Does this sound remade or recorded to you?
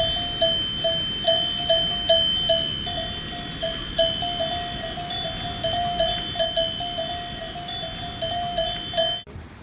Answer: recorded